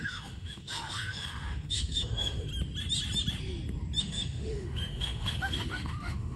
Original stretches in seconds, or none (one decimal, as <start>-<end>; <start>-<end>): 2.5-4.0